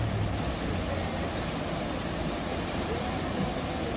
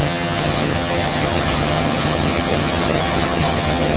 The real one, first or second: first